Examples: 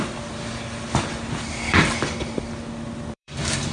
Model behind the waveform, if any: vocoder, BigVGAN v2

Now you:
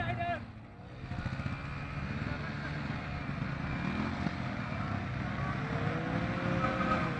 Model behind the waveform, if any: none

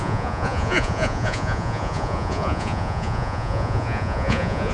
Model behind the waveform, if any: vocoder, Vocos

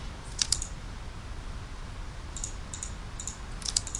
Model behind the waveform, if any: none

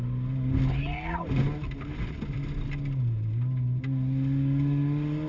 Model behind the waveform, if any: none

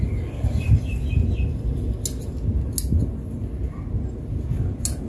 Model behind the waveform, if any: none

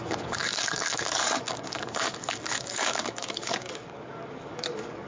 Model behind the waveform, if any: codec, DAC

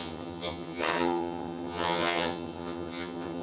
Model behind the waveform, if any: vocoder, HiFi-GAN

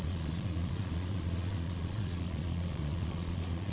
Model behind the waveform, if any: vocoder, Vocos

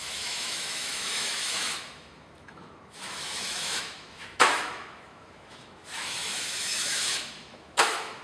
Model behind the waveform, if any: autoencoder, DAC-VAE